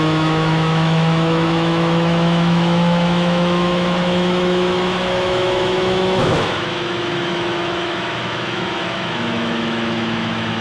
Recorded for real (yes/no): no